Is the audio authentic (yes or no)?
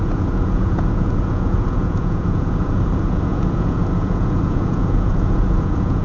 no